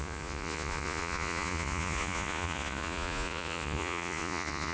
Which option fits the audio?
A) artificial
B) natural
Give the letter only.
A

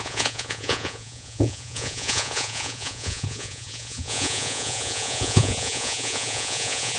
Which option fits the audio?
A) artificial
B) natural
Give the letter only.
A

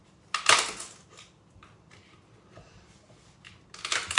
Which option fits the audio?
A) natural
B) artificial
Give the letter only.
A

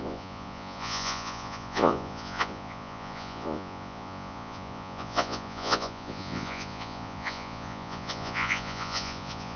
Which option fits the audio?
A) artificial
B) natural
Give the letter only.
A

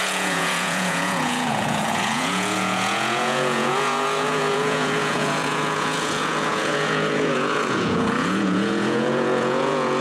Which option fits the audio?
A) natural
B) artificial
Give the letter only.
B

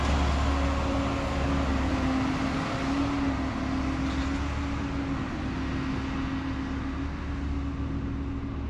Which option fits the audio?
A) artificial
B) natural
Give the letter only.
B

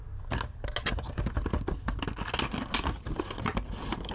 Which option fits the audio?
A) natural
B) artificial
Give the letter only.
A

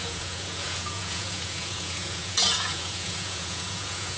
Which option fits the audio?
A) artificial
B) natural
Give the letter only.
A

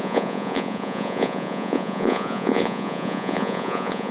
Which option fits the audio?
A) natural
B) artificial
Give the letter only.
B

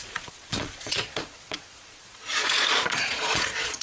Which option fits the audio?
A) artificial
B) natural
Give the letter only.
A